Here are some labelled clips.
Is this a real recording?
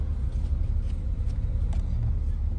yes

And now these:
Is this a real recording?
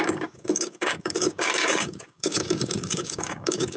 no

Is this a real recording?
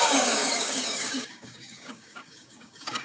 no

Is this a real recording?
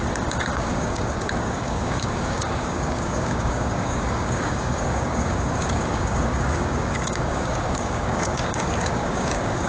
no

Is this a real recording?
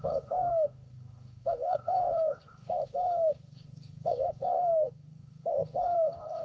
no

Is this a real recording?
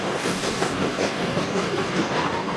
no